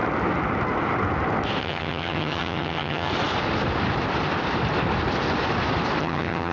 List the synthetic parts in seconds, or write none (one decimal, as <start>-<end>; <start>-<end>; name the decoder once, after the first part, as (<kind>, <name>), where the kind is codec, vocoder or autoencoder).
1.6-3.1 (vocoder, HiFi-GAN); 6.0-6.5